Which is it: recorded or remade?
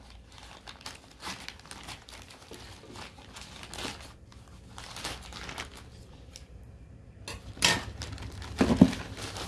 recorded